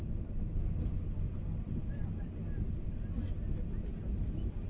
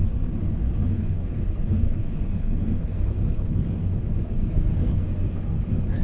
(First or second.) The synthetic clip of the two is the second